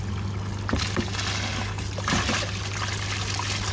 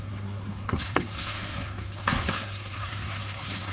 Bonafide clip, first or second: first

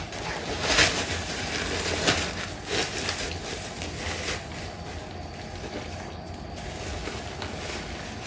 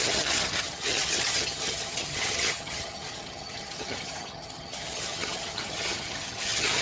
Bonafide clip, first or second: first